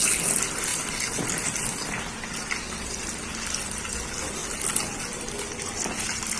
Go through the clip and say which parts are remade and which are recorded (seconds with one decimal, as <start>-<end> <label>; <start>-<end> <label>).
0.0-6.4 recorded